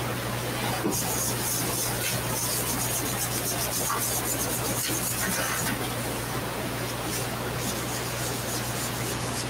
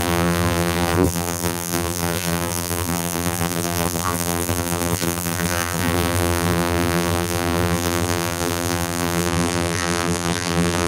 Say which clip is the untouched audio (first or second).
first